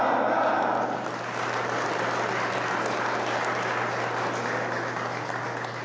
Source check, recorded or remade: recorded